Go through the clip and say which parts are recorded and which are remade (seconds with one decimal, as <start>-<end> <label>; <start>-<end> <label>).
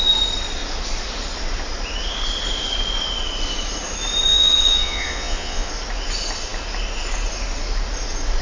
0.0-4.3 recorded; 4.3-5.7 remade; 5.7-8.4 recorded